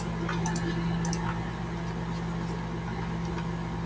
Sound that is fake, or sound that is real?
real